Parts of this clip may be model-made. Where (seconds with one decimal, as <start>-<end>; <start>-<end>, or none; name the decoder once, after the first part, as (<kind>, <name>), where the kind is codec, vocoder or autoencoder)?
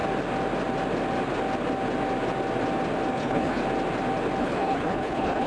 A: 3.1-3.6 (codec, HILCodec); 4.4-5.5